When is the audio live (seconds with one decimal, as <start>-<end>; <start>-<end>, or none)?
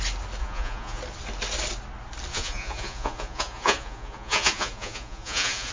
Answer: 0.0-0.4; 1.0-2.3